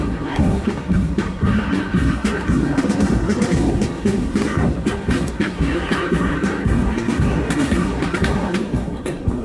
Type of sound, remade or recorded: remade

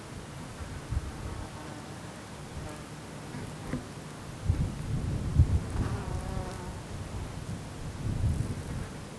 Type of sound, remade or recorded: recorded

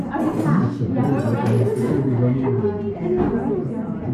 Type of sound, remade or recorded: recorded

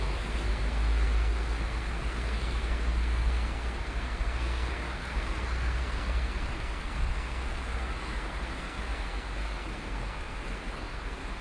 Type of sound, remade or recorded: remade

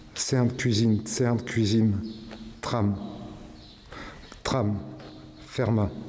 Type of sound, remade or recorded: recorded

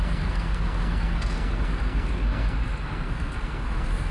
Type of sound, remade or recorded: remade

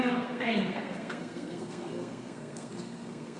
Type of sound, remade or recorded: remade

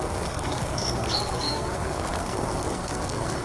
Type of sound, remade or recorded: remade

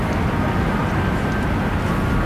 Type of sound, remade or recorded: recorded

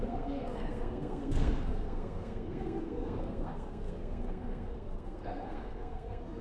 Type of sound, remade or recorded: remade